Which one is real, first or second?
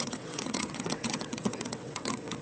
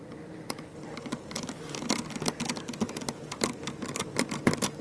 second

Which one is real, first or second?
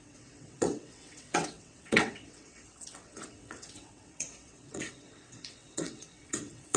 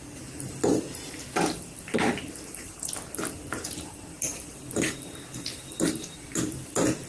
second